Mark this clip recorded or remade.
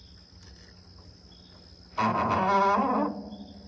recorded